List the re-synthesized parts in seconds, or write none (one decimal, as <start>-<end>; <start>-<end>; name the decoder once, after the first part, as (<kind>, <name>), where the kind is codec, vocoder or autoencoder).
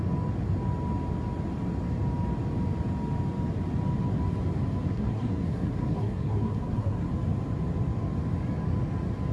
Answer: 4.9-7.1 (codec, SNAC)